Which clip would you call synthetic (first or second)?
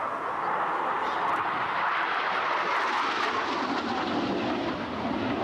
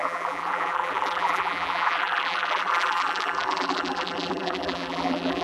second